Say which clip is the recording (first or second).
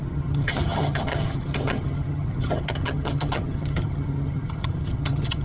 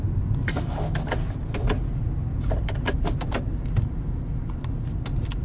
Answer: second